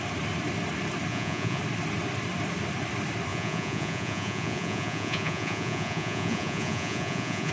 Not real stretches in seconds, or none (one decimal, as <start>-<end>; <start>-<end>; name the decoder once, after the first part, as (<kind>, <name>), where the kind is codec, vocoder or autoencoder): 1.1-1.6 (vocoder, Vocos); 3.3-7.5